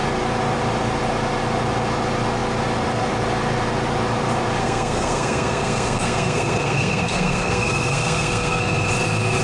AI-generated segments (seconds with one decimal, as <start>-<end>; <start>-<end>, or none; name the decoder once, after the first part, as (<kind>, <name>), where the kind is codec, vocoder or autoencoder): 4.6-8.6 (codec, SNAC)

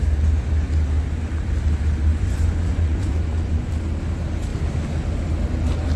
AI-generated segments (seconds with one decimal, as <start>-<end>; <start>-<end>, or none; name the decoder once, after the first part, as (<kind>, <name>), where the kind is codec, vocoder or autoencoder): 2.1-3.7 (vocoder, Vocos)

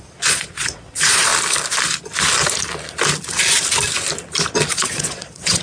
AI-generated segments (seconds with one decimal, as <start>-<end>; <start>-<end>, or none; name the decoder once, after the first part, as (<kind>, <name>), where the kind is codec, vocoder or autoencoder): 0.0-1.3 (vocoder, Vocos); 4.7-5.6

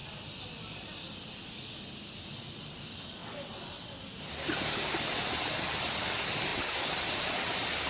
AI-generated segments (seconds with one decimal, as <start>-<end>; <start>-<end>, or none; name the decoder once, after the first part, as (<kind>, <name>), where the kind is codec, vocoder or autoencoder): 0.0-3.2 (vocoder, BigVGAN v2); 4.3-7.9

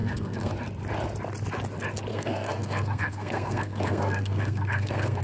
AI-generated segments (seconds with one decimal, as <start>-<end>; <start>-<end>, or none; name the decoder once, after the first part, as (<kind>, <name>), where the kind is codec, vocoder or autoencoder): 0.0-0.5 (codec, SNAC); 2.1-5.2

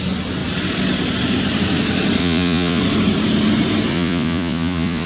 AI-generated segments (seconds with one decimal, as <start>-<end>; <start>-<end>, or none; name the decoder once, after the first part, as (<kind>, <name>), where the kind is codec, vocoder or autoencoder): 2.2-2.8 (vocoder, Vocos); 3.9-5.1

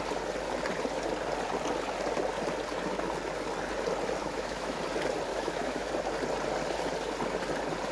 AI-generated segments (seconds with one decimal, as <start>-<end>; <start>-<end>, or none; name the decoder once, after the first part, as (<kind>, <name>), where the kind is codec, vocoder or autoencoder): 4.2-4.8 (autoencoder, DAC-VAE); 5.3-5.9

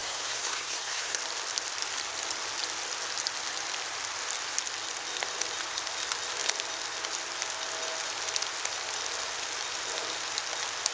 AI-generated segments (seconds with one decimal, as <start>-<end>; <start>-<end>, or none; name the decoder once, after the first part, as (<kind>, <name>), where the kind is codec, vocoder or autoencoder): 0.0-1.2 (codec, SNAC)